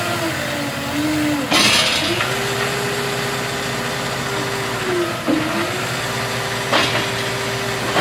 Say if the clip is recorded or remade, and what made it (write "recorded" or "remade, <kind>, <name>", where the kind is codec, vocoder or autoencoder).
recorded